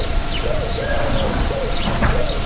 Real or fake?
fake